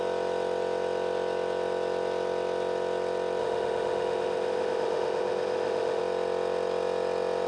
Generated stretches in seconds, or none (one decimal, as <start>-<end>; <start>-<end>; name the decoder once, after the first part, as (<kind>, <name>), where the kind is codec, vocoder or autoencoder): 3.4-6.0 (autoencoder, DAC-VAE)